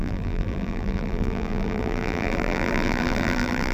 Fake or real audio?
fake